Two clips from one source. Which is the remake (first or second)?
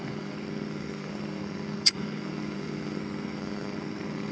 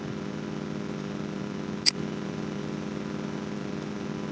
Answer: first